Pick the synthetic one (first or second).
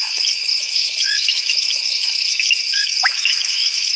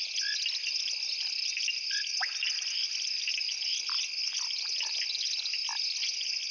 first